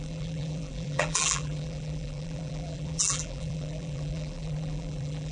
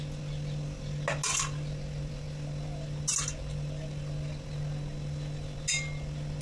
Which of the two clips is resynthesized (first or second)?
first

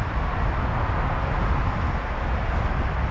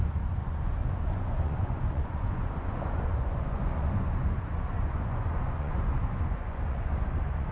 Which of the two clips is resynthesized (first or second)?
second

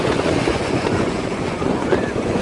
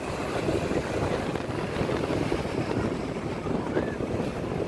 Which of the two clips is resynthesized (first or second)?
first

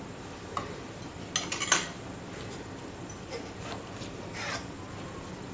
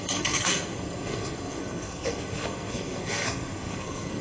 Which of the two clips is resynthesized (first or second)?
second